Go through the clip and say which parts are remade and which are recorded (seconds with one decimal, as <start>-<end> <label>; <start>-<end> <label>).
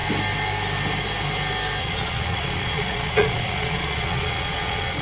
0.0-1.8 recorded; 1.8-5.0 remade